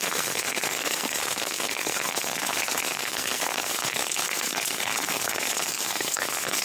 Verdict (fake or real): fake